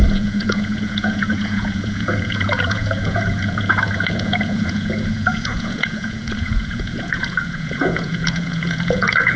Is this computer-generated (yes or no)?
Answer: yes